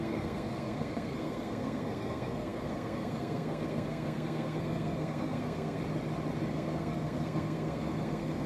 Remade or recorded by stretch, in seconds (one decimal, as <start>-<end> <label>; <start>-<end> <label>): 0.0-5.8 remade; 5.8-6.5 recorded; 6.5-8.5 remade